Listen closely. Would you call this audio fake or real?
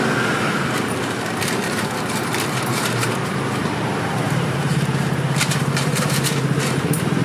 fake